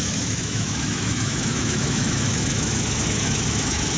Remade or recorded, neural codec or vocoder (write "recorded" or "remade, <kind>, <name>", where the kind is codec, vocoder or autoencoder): remade, autoencoder, DAC-VAE